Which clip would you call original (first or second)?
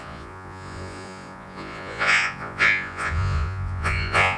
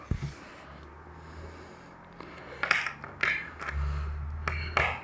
second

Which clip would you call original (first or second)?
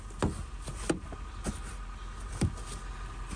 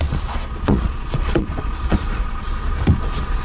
first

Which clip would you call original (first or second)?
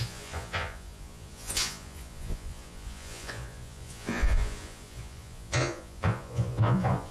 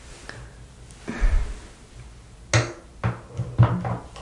second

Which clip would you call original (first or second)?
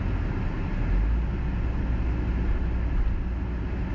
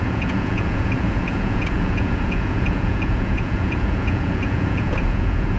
first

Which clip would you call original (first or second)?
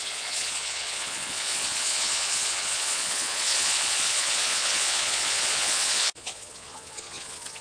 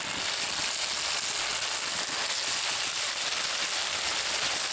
second